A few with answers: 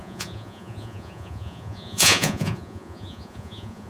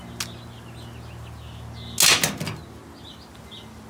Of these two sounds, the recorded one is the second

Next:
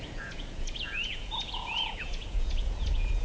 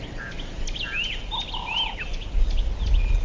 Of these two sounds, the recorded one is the second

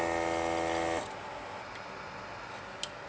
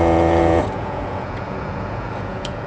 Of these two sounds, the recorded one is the first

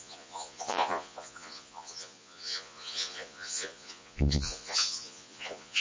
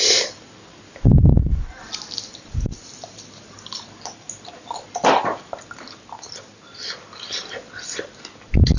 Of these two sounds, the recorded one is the second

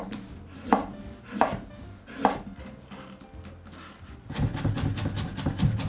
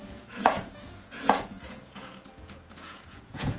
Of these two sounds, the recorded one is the first